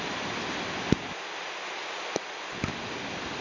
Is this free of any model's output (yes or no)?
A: yes